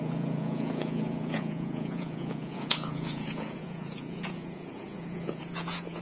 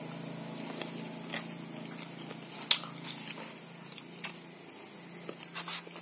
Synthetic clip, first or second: first